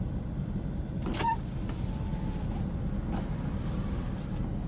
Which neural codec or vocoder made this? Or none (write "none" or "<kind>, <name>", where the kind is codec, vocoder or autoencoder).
none